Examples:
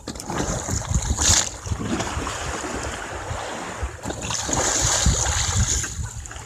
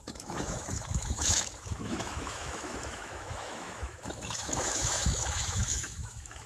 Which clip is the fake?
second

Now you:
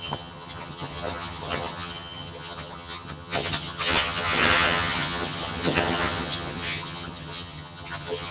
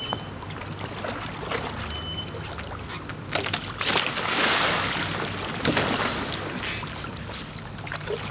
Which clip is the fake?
first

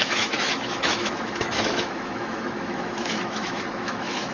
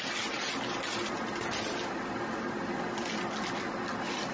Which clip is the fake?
first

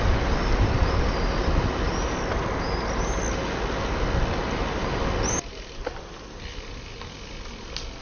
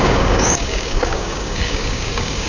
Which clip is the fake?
second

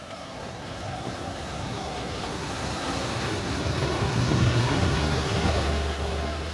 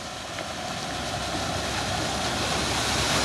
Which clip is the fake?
first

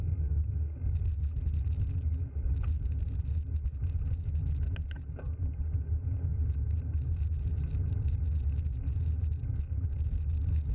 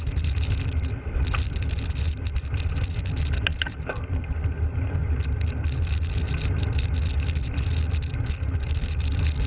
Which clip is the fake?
second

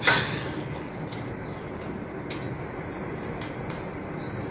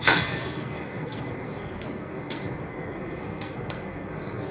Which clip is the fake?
second